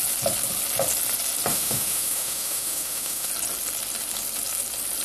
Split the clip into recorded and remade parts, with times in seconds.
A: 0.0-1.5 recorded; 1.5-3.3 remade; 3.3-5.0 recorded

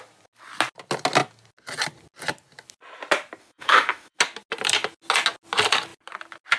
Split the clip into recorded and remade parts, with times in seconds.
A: 0.0-3.4 recorded; 3.4-4.2 remade; 4.2-6.6 recorded

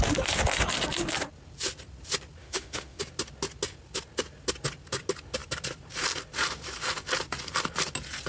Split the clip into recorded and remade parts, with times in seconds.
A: 0.0-2.4 recorded; 2.4-3.0 remade; 3.0-8.3 recorded

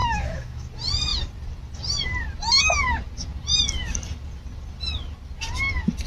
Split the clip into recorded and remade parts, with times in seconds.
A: 0.0-0.7 remade; 0.7-6.1 recorded

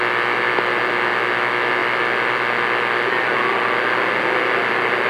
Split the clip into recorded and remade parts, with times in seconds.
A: 0.0-5.1 recorded